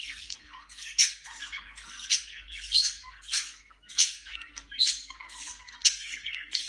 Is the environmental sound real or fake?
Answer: fake